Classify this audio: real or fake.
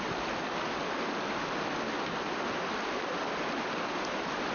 real